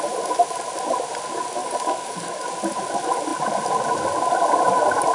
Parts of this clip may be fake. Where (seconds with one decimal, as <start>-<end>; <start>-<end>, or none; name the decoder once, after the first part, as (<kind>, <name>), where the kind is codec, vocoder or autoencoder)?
1.6-2.5 (codec, DAC)